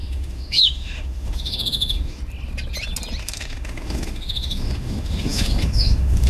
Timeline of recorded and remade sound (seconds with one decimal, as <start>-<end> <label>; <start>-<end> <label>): 0.0-2.2 remade; 2.2-3.2 recorded; 3.2-6.3 remade